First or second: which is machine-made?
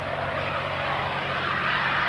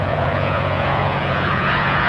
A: second